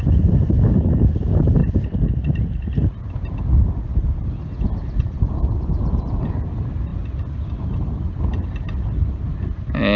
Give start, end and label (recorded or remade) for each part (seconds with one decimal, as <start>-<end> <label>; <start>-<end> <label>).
0.0-10.0 recorded